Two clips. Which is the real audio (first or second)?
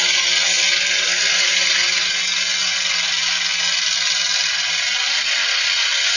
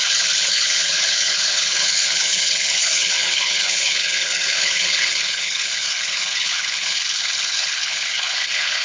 first